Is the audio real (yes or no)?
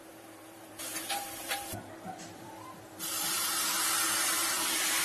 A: no